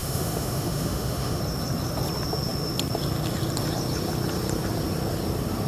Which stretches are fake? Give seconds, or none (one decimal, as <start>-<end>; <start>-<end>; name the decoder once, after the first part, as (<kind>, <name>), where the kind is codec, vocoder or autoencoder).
0.0-1.4 (autoencoder, DAC-VAE)